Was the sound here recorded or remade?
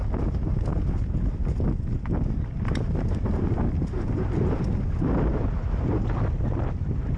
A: recorded